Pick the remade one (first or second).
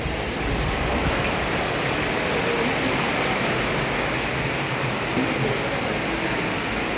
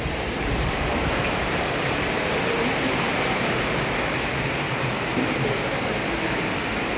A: second